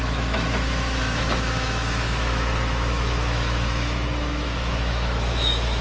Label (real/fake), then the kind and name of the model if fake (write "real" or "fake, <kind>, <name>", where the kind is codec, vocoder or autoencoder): fake, autoencoder, DAC-VAE